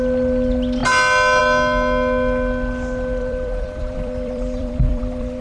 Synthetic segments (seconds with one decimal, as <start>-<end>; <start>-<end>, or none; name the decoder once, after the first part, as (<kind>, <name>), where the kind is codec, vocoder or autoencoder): 3.2-5.4 (vocoder, BigVGAN v2)